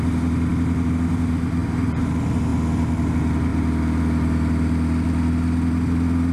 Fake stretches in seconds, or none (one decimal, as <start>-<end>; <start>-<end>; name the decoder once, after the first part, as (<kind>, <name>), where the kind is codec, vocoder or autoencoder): none